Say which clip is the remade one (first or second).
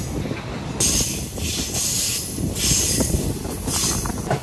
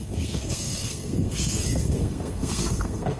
second